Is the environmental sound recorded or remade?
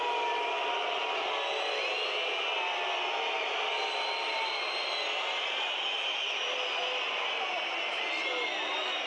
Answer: recorded